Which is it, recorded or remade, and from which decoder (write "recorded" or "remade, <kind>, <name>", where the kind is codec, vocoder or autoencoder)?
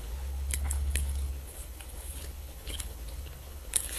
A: remade, codec, HILCodec